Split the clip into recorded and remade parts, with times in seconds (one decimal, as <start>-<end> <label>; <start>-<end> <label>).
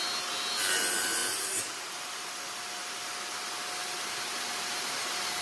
0.0-5.4 recorded